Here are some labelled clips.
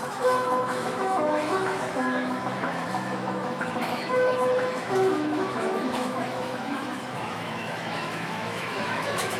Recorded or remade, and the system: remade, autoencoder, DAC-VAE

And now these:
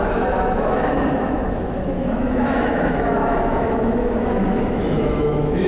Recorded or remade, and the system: remade, autoencoder, DAC-VAE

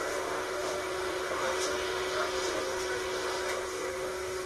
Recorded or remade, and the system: remade, autoencoder, DAC-VAE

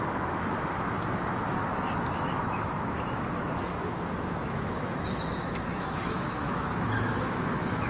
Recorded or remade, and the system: remade, autoencoder, DAC-VAE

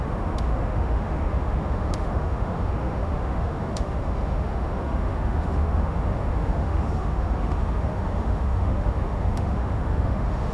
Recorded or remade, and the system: remade, autoencoder, DAC-VAE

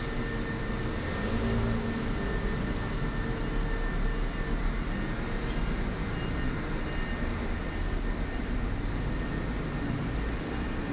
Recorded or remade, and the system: recorded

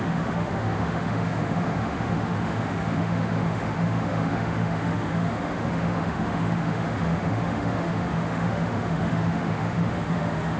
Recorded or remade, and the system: remade, autoencoder, DAC-VAE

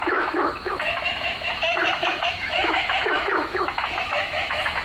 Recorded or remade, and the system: remade, autoencoder, DAC-VAE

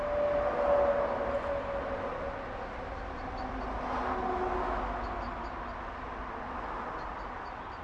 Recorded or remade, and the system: recorded